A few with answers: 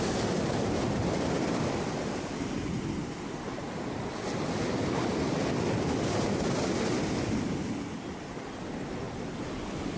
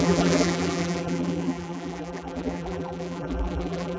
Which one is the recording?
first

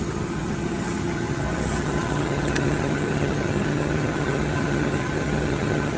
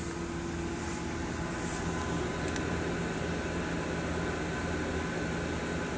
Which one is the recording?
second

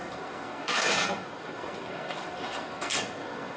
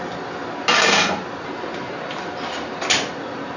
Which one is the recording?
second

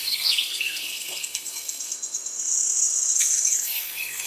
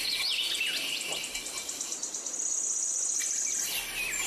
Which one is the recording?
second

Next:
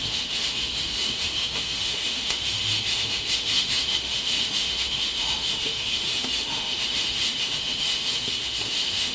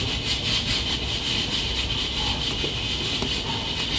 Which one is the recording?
second